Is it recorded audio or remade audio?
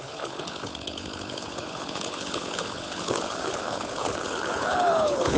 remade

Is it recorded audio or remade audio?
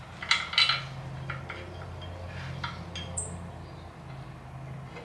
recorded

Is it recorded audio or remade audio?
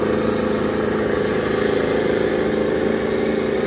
recorded